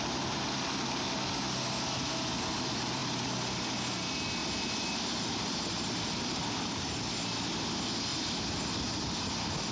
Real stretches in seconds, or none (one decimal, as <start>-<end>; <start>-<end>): 0.0-4.4; 7.0-8.1; 8.8-9.7